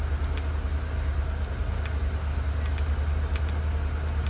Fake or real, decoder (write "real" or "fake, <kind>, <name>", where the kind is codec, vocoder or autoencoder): real